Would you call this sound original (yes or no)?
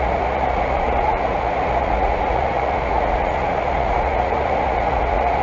no